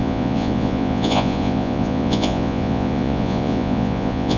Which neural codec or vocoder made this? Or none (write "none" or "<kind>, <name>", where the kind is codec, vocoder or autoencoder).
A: vocoder, Vocos